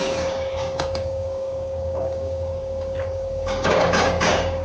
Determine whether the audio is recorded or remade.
remade